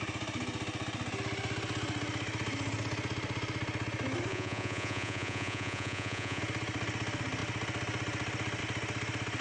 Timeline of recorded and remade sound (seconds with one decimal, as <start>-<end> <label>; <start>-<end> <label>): 0.0-4.3 recorded; 4.3-6.4 remade; 6.4-9.4 recorded